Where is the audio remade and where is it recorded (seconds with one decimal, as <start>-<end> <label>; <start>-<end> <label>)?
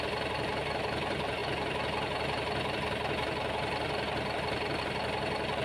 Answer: 0.0-5.6 recorded